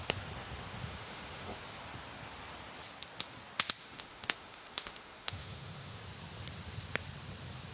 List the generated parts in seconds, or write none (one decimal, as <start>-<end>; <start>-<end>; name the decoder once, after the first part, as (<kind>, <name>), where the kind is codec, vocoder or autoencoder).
0.8-1.6 (autoencoder, DAC-VAE); 3.8-6.0